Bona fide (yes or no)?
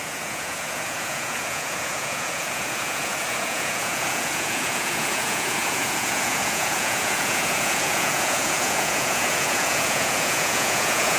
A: no